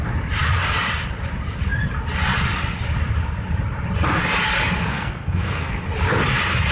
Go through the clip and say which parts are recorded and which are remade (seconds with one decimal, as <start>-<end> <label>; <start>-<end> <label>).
0.0-4.9 recorded; 4.9-5.8 remade; 5.8-6.7 recorded

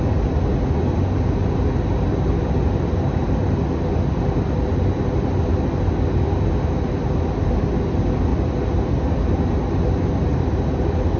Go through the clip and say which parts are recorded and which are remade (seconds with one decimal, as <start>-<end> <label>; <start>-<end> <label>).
0.0-11.2 recorded

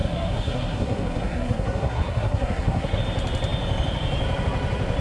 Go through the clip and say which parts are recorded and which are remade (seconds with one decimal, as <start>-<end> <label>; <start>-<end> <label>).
0.0-3.0 remade; 3.0-5.0 recorded

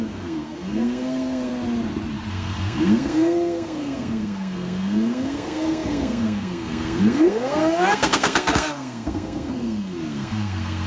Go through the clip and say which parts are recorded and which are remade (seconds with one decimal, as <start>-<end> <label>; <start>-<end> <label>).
0.0-1.5 remade; 1.5-2.3 recorded; 2.3-10.9 remade

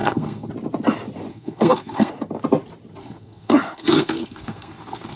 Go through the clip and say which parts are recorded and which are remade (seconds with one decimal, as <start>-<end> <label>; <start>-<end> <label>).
0.0-0.5 remade; 0.5-1.3 recorded; 1.3-2.1 remade; 2.1-3.0 recorded; 3.0-5.2 remade

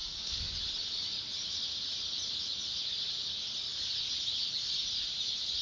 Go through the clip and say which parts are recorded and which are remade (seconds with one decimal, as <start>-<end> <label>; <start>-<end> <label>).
0.0-0.5 remade; 0.5-5.6 recorded